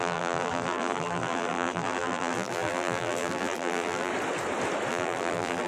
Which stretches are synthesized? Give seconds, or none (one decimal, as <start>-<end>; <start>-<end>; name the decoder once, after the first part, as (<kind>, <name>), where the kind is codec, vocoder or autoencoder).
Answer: 0.0-4.1 (vocoder, BigVGAN v2); 4.9-5.7